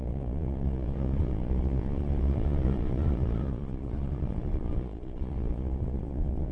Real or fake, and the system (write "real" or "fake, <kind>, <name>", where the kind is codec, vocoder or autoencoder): fake, vocoder, Vocos